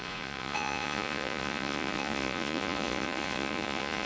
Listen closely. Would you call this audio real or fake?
fake